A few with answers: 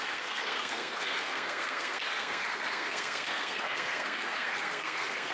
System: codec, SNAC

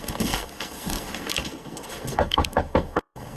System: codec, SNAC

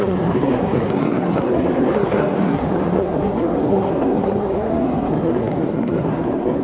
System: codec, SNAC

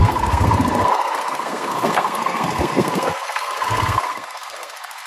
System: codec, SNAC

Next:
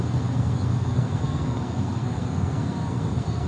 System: codec, SNAC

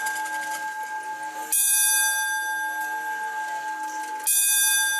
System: none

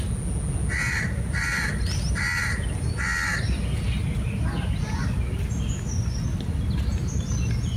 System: none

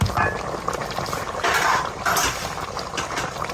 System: none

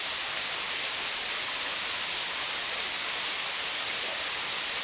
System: none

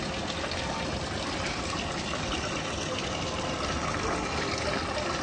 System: none